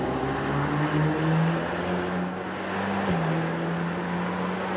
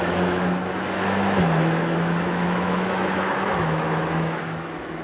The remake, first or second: second